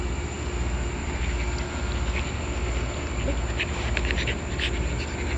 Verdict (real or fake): real